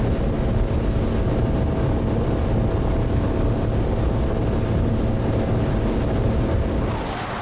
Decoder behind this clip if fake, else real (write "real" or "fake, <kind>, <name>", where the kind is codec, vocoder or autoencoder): real